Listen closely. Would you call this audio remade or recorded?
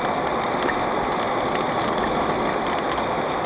recorded